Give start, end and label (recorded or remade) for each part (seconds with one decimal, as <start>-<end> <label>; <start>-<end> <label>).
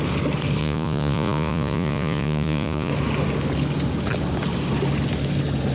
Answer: 0.0-0.6 recorded; 0.6-2.9 remade; 2.9-5.7 recorded